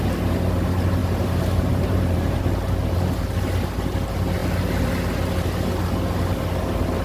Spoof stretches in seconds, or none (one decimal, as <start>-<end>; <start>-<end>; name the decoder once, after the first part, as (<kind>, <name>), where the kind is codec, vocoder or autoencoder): 1.0-2.4 (vocoder, BigVGAN v2)